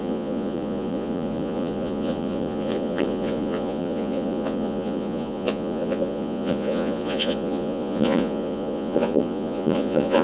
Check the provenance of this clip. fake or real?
fake